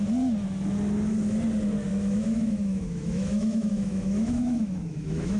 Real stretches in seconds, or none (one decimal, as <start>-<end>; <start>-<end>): 0.0-1.9